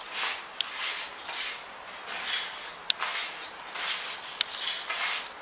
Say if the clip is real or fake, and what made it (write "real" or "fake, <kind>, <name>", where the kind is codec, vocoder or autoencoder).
real